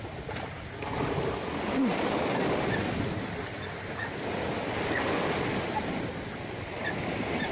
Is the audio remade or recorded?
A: recorded